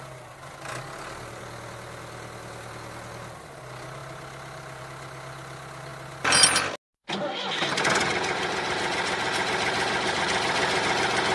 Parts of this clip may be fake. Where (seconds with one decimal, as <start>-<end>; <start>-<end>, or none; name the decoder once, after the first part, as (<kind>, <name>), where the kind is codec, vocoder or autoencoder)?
none